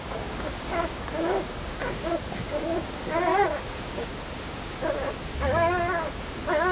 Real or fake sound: fake